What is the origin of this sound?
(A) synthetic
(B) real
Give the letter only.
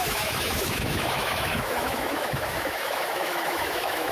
A